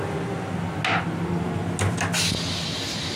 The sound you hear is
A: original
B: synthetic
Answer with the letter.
A